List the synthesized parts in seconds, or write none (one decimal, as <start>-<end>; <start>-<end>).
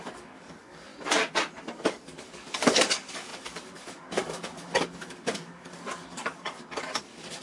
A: 0.0-0.9; 1.7-7.4